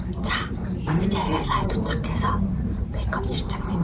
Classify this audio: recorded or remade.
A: remade